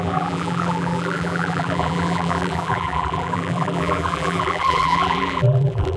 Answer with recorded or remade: remade